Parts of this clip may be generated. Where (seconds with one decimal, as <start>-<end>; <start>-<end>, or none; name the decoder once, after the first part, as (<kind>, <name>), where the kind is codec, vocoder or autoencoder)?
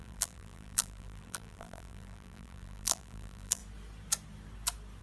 0.0-3.6 (vocoder, BigVGAN v2)